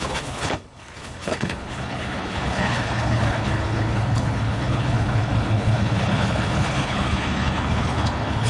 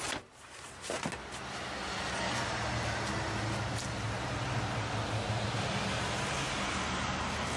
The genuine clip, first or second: second